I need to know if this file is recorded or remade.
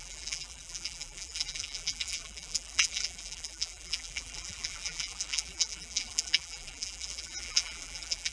remade